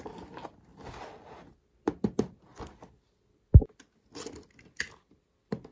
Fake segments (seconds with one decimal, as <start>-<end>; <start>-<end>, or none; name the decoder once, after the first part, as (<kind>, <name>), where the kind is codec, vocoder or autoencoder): none